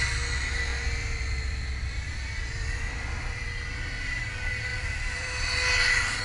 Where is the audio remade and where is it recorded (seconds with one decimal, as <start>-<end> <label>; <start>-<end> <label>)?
0.0-0.7 recorded; 0.7-4.2 remade; 4.2-4.7 recorded; 4.7-6.2 remade